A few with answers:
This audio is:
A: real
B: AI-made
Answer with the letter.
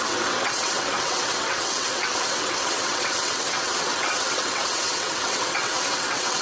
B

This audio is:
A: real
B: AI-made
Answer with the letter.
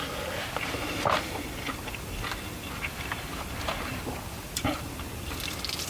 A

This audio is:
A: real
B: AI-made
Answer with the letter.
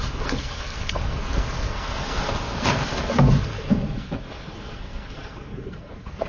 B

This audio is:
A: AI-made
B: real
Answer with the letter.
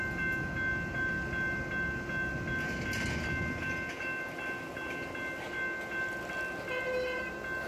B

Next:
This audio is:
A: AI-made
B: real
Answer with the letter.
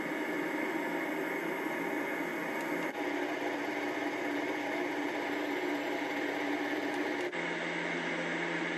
B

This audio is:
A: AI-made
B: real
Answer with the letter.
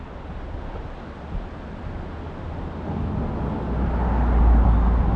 B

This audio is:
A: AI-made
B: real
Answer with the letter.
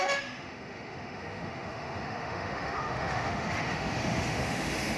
A